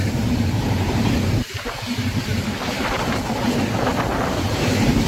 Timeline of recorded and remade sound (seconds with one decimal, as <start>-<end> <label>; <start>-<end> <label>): 0.0-5.1 remade